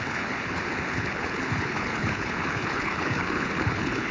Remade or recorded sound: remade